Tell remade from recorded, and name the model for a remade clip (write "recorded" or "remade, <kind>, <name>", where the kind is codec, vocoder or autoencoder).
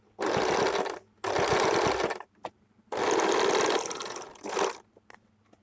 recorded